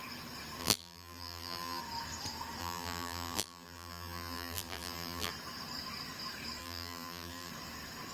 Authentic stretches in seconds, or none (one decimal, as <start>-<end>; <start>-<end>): 0.0-0.6; 1.8-2.6; 5.3-6.6; 7.5-8.1

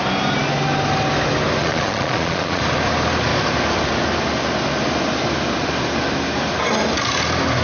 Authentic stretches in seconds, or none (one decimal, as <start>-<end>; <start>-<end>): 0.0-1.6; 2.6-7.6

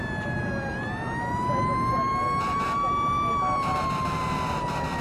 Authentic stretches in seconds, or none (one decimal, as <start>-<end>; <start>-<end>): 0.0-1.9

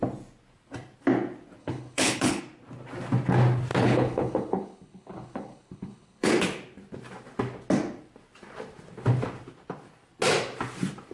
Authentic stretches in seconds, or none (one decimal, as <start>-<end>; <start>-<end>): 0.0-1.6; 2.4-3.7; 6.3-11.1

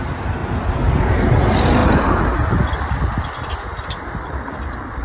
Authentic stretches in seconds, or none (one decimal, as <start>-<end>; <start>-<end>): 0.0-1.8